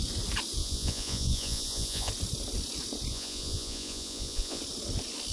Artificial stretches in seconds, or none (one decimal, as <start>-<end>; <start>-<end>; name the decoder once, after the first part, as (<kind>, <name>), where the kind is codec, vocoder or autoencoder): 0.6-2.1 (vocoder, Vocos); 3.1-4.6